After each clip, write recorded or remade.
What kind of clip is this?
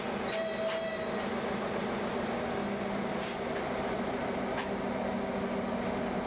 recorded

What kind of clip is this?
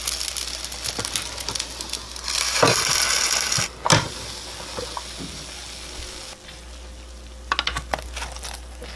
recorded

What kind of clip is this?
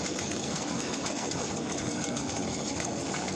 remade